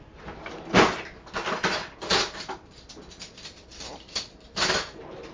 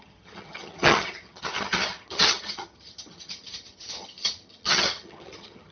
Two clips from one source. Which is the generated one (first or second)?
second